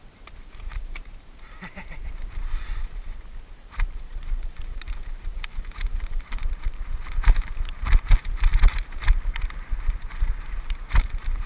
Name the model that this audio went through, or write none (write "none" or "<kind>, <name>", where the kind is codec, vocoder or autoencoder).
vocoder, BigVGAN v2